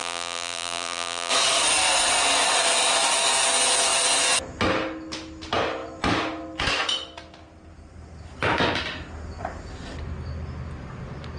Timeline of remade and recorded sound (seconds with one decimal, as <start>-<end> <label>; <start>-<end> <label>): 0.0-1.3 remade; 1.3-11.4 recorded